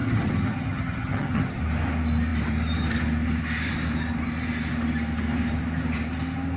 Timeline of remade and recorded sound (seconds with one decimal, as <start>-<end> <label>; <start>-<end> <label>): 0.0-1.6 remade; 1.6-6.6 recorded